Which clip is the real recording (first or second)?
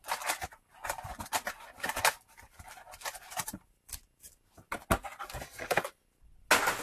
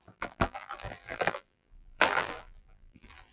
first